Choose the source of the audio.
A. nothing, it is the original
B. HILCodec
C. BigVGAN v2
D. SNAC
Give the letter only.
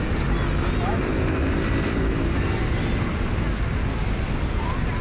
A